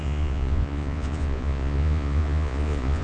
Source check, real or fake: fake